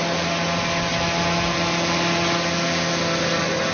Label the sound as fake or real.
real